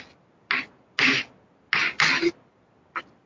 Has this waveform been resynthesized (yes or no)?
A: no